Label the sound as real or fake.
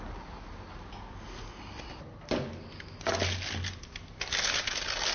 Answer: real